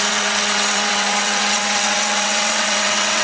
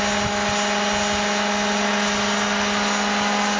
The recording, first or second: second